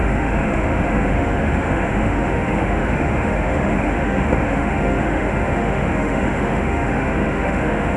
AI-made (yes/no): yes